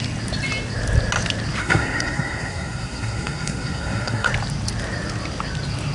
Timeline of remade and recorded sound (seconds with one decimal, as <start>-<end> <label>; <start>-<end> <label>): 0.0-1.6 recorded; 1.6-4.3 remade; 4.3-5.9 recorded